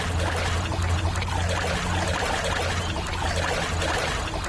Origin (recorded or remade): recorded